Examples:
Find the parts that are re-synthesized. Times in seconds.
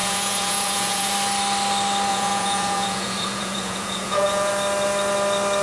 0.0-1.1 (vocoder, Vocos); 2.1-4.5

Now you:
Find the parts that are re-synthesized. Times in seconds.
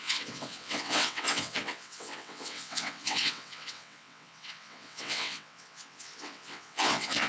0.0-7.3 (vocoder, WaveNeXt)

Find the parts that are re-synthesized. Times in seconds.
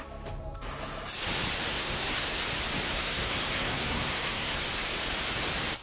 1.7-2.4 (codec, SNAC); 2.9-4.6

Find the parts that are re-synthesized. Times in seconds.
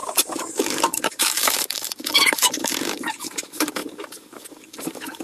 0.0-5.2 (codec, DAC)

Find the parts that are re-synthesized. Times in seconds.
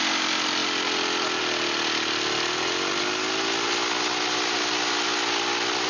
none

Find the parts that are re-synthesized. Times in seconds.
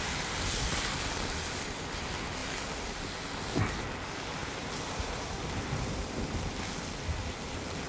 4.4-6.2 (vocoder, BigVGAN v2)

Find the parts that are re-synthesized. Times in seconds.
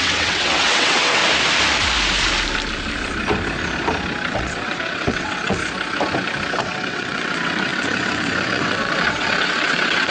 0.0-1.2 (vocoder, WaveNeXt); 4.3-5.6; 6.6-10.1